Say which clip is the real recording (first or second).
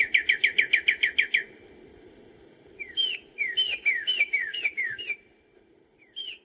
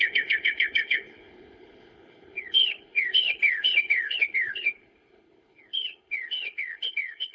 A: first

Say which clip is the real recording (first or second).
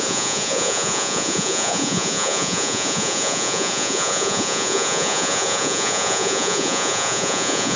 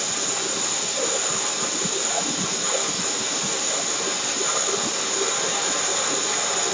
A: second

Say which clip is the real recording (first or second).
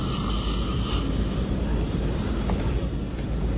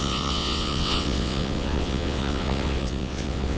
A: first